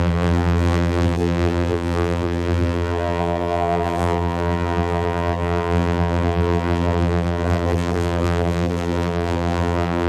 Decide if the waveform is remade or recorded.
remade